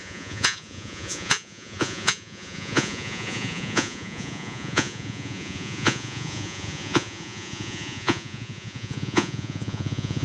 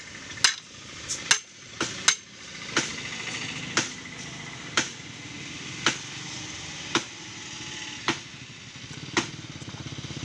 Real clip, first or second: second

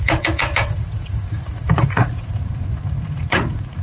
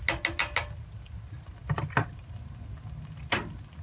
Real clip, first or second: second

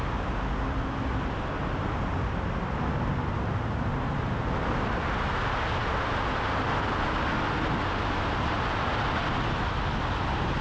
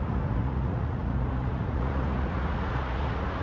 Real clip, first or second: first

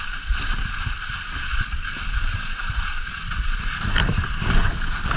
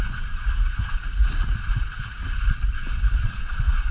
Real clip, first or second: first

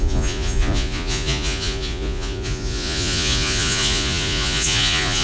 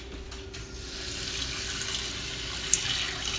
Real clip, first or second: second